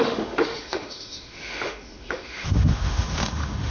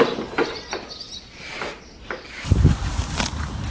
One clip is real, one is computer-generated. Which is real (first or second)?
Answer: second